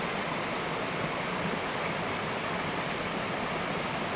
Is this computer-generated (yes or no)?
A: no